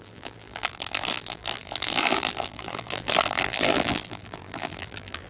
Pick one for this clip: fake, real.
fake